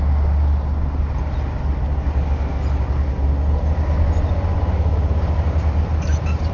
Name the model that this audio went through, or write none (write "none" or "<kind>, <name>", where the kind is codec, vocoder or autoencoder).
none